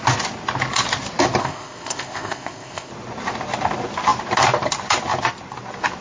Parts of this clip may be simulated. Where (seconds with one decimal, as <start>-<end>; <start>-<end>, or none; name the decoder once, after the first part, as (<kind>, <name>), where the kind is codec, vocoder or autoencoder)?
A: 1.4-2.9 (codec, ZipCodec)